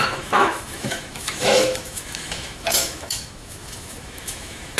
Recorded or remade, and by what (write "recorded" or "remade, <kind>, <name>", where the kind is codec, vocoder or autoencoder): remade, autoencoder, DAC-VAE